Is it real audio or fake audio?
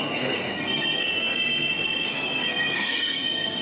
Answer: fake